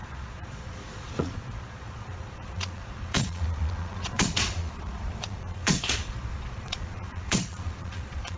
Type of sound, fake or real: fake